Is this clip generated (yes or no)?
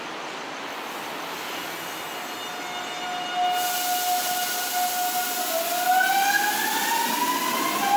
no